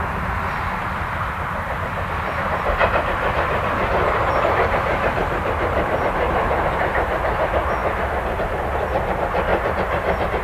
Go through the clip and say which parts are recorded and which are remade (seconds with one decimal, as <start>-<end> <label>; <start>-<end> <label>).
0.0-5.2 recorded; 5.2-5.9 remade; 5.9-9.5 recorded; 9.5-10.4 remade